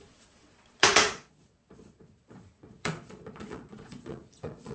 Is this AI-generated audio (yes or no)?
yes